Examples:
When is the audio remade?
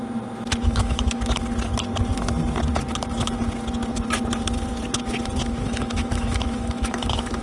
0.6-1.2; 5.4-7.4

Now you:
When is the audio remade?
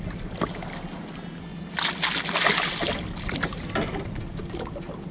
none